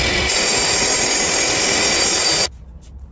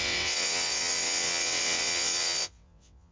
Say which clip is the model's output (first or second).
second